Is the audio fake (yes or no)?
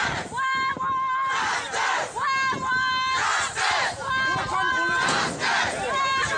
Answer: no